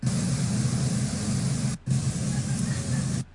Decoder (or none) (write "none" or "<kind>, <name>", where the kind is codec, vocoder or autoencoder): none